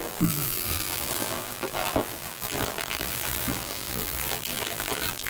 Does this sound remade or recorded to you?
remade